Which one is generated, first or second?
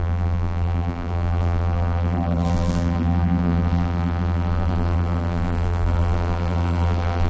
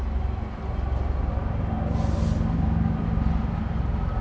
first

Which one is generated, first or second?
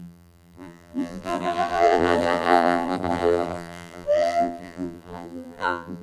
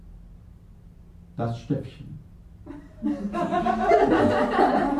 first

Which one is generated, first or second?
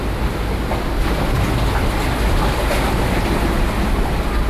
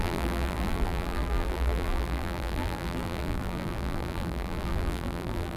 second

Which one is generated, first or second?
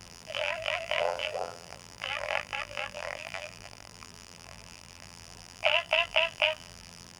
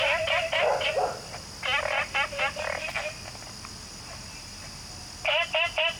first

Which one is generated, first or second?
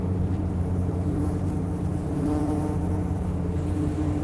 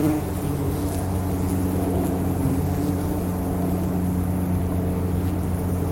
first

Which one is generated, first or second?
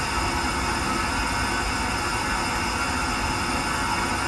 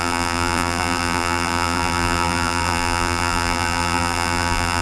second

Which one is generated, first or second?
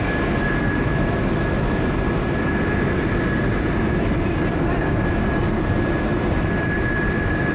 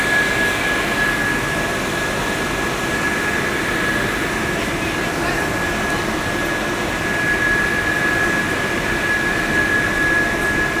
first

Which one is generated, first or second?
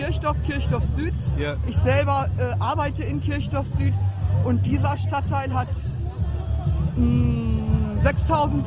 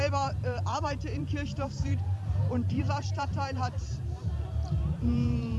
second